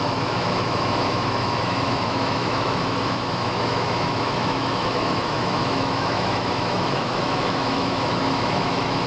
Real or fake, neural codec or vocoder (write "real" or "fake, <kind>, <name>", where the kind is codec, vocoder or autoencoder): fake, autoencoder, DAC-VAE